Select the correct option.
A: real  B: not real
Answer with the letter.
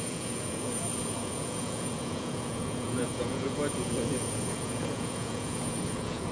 B